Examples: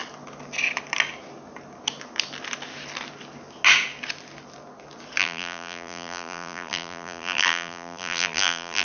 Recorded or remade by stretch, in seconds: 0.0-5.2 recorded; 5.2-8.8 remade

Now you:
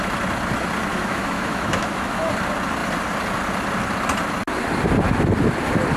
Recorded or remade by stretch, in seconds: 0.0-0.9 recorded; 0.9-2.3 remade; 2.3-6.0 recorded

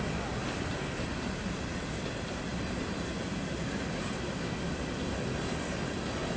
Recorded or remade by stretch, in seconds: 0.0-6.4 recorded

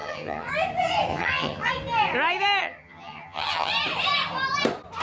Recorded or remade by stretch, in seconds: 0.0-0.5 remade; 0.5-1.1 recorded; 1.1-1.7 remade; 1.7-2.6 recorded; 2.6-3.7 remade; 3.7-5.0 recorded

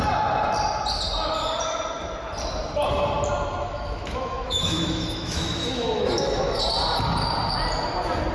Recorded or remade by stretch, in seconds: 0.0-3.6 recorded; 3.6-6.6 remade; 6.6-8.3 recorded